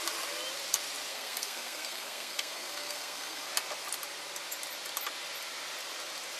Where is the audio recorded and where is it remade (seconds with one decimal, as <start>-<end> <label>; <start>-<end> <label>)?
0.0-1.1 recorded; 1.1-3.5 remade; 3.5-6.4 recorded